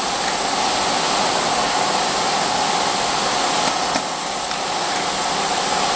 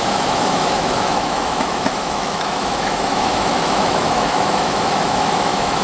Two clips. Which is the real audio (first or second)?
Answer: first